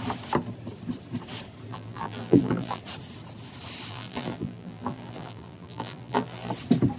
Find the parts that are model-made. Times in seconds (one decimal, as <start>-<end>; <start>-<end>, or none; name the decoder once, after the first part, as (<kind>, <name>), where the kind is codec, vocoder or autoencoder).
1.7-2.8 (vocoder, BigVGAN v2); 3.9-6.5